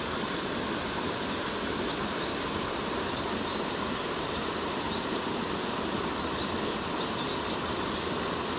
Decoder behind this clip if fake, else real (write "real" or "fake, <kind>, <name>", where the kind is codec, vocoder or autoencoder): real